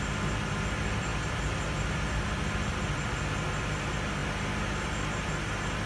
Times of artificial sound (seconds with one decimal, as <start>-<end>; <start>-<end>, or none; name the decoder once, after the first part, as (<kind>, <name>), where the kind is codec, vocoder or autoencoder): none